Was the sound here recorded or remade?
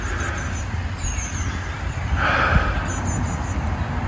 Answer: recorded